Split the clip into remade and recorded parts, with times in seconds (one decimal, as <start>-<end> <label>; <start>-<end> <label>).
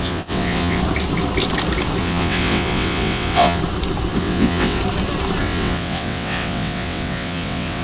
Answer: 0.0-0.8 remade; 0.8-2.0 recorded; 2.0-3.6 remade; 3.6-4.2 recorded; 4.2-4.8 remade; 4.8-5.4 recorded; 5.4-7.8 remade